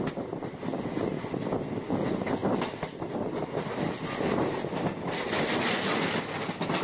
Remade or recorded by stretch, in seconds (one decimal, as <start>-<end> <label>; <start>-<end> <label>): 0.0-6.8 recorded